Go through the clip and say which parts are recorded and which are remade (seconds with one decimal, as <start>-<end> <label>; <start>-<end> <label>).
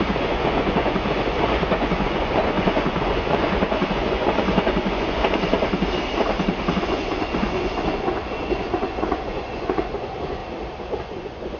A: 0.0-5.7 remade; 5.7-6.7 recorded; 6.7-10.4 remade; 10.4-11.0 recorded; 11.0-11.6 remade